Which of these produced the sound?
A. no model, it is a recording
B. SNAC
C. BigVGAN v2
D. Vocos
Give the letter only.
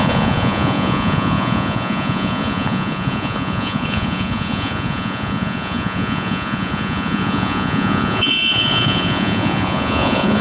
D